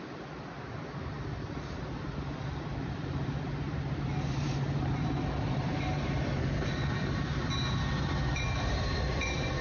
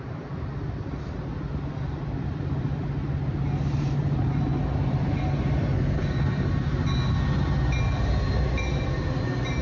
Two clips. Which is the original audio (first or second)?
second